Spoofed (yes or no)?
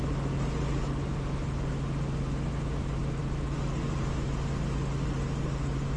no